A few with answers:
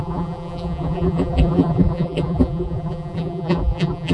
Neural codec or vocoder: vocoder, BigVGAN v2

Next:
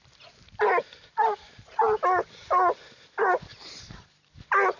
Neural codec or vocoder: none